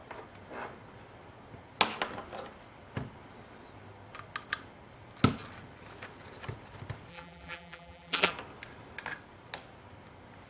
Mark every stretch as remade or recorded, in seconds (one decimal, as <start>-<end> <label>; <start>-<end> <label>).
0.0-7.1 recorded; 7.1-8.3 remade; 8.3-10.5 recorded